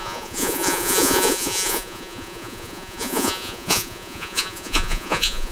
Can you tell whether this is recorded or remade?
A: remade